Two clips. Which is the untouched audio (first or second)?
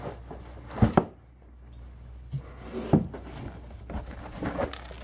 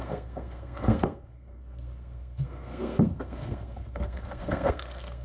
first